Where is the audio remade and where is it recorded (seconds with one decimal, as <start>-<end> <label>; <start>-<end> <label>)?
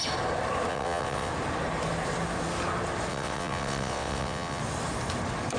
0.0-0.7 recorded; 0.7-1.3 remade; 1.3-3.1 recorded; 3.1-4.6 remade; 4.6-5.6 recorded